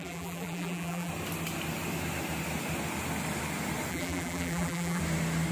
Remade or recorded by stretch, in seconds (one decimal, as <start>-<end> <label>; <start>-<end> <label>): 0.0-1.1 remade; 1.1-3.9 recorded; 3.9-5.0 remade; 5.0-5.5 recorded

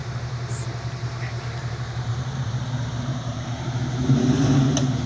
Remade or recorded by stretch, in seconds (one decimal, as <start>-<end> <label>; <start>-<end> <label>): 0.0-1.2 remade; 1.2-2.1 recorded; 2.1-5.1 remade